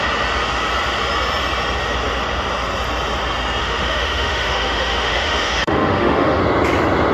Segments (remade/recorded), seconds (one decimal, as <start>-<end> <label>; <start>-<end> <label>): 0.0-3.6 recorded; 3.6-6.4 remade; 6.4-7.1 recorded